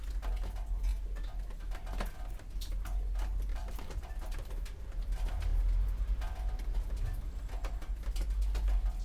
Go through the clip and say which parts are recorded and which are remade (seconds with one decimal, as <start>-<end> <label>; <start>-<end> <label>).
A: 0.0-3.5 recorded; 3.5-4.1 remade; 4.1-9.0 recorded